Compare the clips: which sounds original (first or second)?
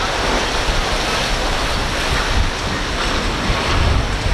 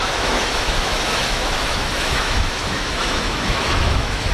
first